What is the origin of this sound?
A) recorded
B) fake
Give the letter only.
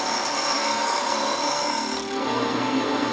B